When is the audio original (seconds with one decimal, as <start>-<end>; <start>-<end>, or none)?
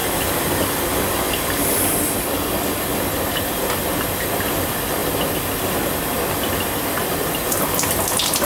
0.0-8.5